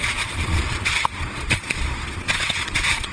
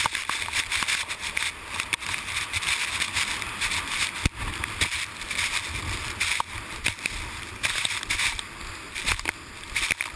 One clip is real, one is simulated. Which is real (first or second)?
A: second